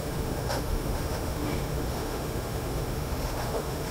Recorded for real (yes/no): no